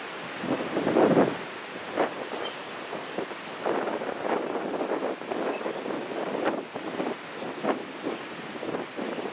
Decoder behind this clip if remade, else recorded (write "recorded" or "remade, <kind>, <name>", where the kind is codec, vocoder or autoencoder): recorded